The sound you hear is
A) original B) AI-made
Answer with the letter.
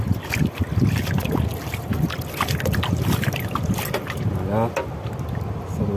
A